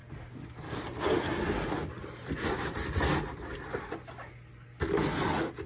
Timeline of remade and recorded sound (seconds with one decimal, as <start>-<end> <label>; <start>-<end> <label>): 0.0-5.7 recorded